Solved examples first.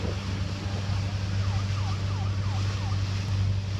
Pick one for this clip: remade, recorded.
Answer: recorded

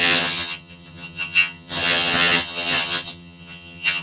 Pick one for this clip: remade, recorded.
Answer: remade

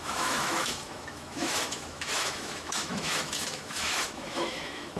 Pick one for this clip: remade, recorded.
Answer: remade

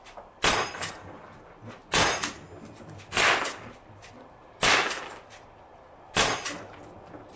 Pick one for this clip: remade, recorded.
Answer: recorded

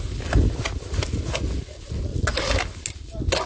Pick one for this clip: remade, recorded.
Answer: recorded